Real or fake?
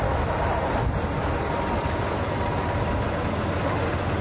real